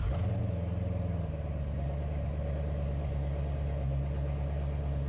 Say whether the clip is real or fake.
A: real